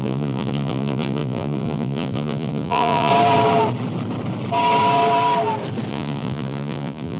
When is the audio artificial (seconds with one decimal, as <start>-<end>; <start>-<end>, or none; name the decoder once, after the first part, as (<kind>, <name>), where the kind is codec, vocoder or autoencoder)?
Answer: 0.0-3.1 (vocoder, Vocos); 5.9-7.2